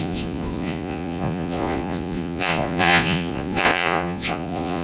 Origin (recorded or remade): remade